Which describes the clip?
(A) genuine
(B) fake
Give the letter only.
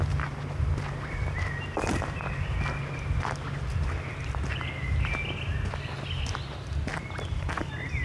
A